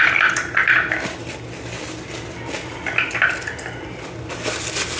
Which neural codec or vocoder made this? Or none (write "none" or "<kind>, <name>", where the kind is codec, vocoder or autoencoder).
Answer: none